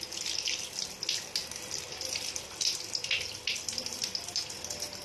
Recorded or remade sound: recorded